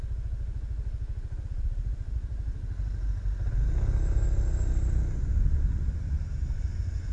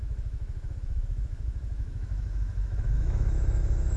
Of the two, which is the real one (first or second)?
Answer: first